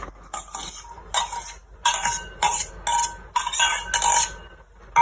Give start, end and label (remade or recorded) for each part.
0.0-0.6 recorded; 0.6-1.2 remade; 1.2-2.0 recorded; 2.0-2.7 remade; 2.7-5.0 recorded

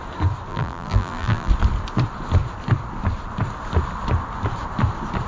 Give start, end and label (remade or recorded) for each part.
0.0-0.5 recorded; 0.5-1.5 remade; 1.5-5.3 recorded